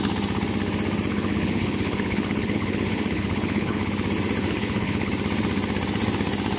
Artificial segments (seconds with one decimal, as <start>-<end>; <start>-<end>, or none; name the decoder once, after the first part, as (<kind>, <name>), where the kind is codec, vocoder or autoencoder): 1.1-3.9 (codec, HILCodec); 4.4-5.1